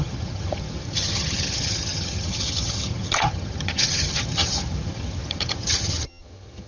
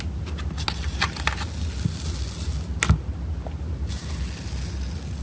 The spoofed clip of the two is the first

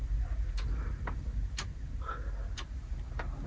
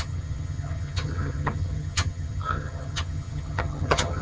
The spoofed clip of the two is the second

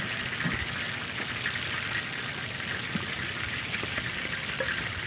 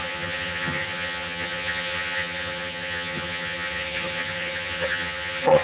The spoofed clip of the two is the second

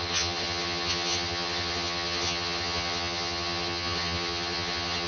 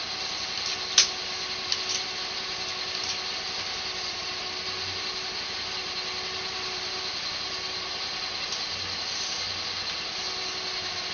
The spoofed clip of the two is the first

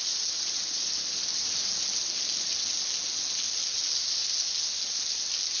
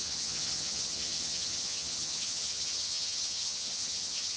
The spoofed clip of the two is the second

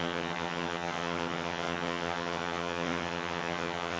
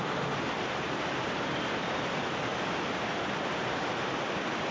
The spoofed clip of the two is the first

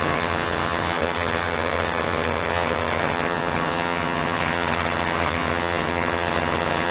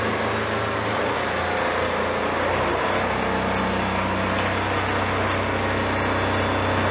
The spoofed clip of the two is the first